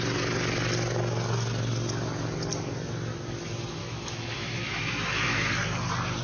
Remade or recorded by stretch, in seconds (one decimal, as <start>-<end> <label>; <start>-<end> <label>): 0.0-3.8 recorded; 3.8-5.5 remade; 5.5-6.2 recorded

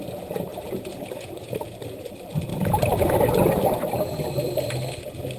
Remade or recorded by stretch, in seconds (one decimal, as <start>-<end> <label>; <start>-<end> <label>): 0.0-5.4 recorded